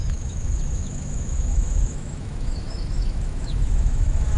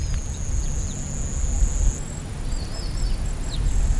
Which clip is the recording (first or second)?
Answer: second